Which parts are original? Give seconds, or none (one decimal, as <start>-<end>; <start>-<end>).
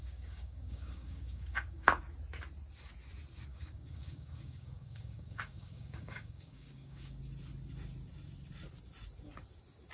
2.0-3.5; 7.2-9.9